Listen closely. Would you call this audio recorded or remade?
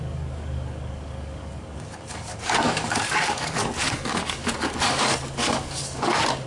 remade